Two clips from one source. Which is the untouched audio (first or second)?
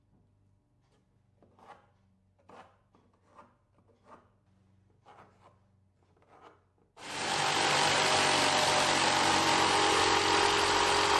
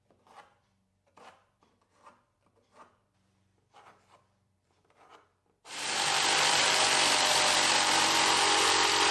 first